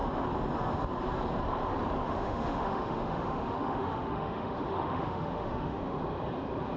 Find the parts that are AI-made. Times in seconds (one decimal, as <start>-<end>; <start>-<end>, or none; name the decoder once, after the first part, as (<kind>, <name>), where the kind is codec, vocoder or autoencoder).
2.0-6.0 (autoencoder, DAC-VAE)